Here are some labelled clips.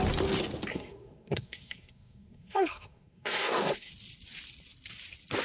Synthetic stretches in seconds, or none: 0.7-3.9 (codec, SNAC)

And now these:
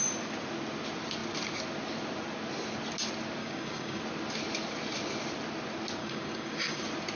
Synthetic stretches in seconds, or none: 3.4-4.0 (codec, DAC); 6.0-6.8